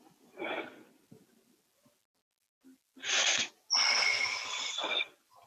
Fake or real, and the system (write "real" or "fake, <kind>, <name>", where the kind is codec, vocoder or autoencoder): real